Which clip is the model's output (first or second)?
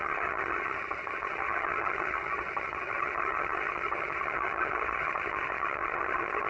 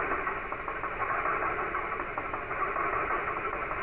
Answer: first